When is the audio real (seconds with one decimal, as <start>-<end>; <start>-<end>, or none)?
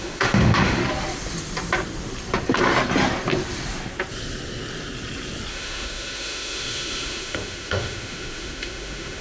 0.8-5.5